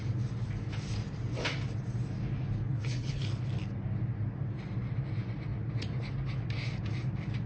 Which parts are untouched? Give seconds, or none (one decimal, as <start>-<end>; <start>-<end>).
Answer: 0.0-2.7; 3.4-7.5